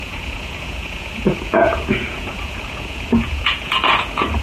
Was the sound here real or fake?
fake